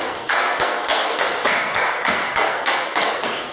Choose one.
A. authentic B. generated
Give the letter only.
B